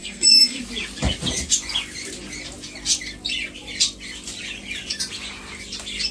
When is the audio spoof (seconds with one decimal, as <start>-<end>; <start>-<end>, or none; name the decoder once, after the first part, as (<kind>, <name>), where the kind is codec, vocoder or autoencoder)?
0.0-0.6 (codec, SNAC)